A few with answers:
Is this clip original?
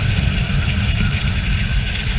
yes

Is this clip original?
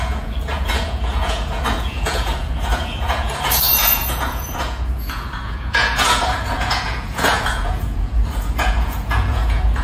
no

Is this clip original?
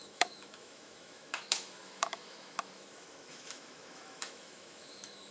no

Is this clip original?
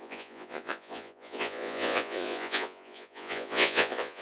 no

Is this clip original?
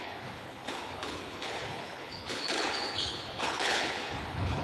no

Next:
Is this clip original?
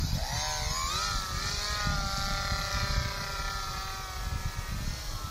yes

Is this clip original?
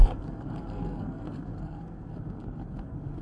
no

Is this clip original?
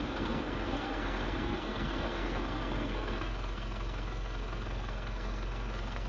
no